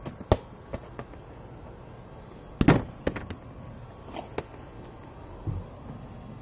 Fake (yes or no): no